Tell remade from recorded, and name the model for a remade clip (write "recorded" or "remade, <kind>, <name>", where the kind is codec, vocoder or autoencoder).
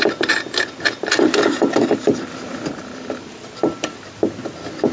recorded